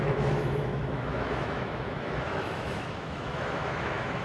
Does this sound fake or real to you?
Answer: fake